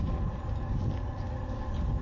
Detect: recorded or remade recorded